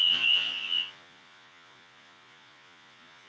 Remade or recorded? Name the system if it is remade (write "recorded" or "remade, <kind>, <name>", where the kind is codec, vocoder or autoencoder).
remade, vocoder, Vocos